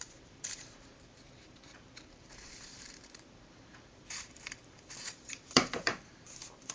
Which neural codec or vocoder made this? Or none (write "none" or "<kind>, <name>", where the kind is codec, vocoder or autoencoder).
vocoder, BigVGAN v2